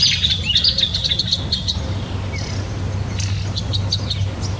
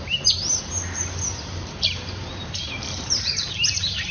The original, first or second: first